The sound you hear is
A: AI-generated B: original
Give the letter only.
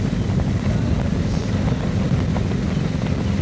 B